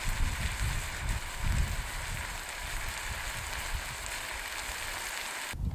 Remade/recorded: recorded